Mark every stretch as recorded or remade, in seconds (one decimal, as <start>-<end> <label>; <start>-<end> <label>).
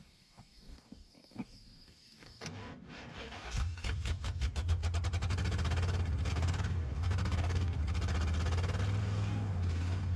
0.0-4.8 remade; 4.8-6.3 recorded; 6.3-7.8 remade; 7.8-9.0 recorded; 9.0-10.2 remade